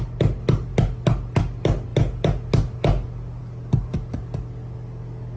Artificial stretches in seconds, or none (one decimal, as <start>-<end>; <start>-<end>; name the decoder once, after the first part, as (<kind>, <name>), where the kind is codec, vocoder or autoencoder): none